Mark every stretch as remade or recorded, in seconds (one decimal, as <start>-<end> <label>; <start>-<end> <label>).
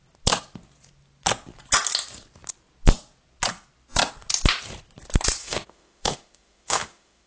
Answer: 0.0-5.4 recorded; 5.4-7.3 remade